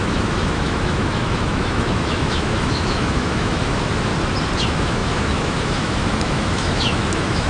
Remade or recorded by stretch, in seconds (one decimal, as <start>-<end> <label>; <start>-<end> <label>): 0.0-4.1 remade; 4.1-4.6 recorded; 4.6-7.5 remade